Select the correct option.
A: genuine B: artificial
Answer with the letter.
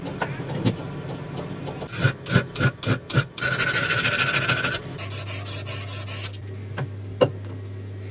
A